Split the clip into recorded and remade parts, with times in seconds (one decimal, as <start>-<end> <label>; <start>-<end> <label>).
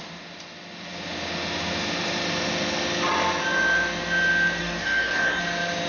0.0-4.6 recorded; 4.6-5.4 remade; 5.4-5.9 recorded